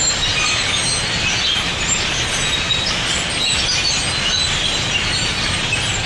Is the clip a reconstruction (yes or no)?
no